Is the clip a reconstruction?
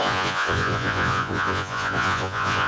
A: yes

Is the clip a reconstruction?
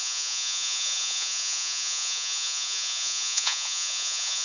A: yes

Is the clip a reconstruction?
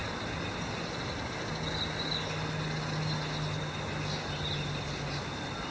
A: no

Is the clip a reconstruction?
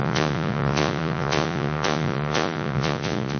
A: yes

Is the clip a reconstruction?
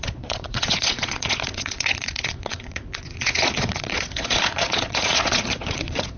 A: yes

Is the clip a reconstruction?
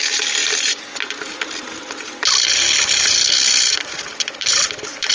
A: no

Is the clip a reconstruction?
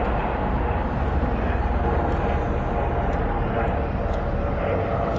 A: no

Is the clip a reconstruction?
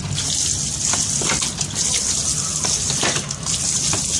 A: no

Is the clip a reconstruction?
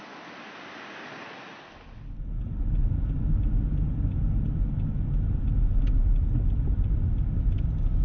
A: no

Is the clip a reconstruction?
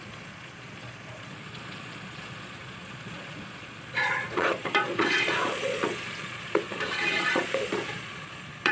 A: yes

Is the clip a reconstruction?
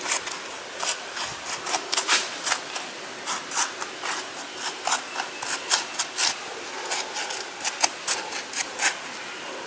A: no